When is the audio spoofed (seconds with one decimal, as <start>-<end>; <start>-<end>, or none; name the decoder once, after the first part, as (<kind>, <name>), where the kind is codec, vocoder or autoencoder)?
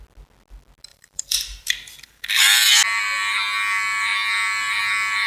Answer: 0.9-2.7 (vocoder, BigVGAN v2)